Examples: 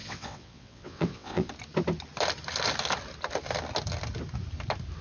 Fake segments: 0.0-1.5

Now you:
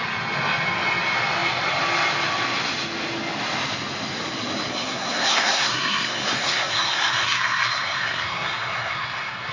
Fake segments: 4.7-9.5

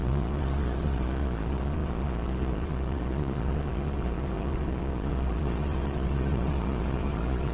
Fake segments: 0.0-7.5

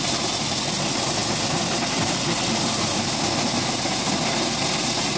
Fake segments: none

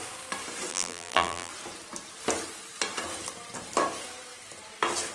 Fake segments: 0.7-1.5